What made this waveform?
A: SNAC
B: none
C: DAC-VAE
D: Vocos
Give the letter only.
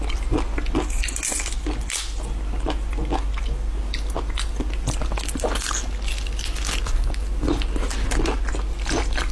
B